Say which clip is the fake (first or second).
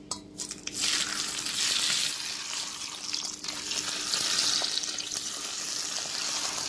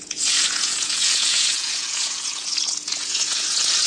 second